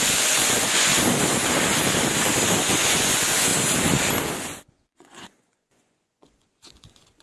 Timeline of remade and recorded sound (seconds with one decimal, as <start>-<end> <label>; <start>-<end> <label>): 0.0-0.9 remade; 0.9-2.6 recorded; 2.6-3.5 remade; 3.5-4.3 recorded; 4.3-7.2 remade